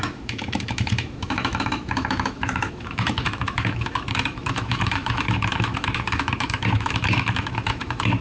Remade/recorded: remade